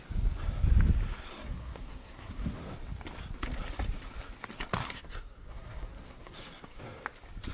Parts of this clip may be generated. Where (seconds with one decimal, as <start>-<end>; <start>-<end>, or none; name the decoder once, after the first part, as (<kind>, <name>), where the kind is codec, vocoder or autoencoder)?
1.3-2.6 (codec, SNAC); 4.8-6.8